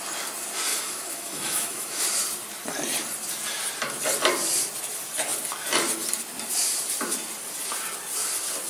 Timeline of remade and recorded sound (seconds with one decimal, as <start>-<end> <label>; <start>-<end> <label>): 0.0-0.7 recorded; 0.7-2.0 remade; 2.0-8.7 recorded